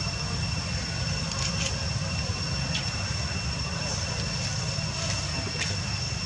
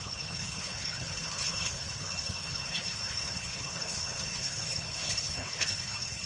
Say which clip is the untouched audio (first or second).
first